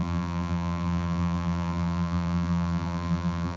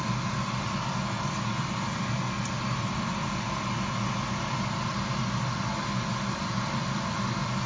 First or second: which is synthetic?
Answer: first